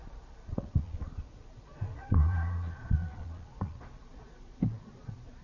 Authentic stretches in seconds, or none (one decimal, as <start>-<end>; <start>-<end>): none